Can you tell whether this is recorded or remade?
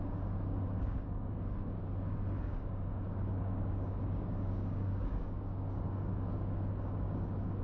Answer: remade